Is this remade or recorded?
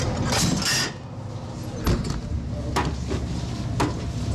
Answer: recorded